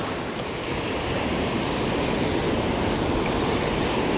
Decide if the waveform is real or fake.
real